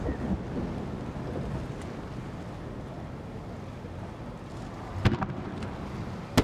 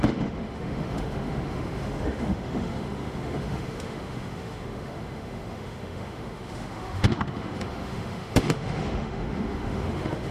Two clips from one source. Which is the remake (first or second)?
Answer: second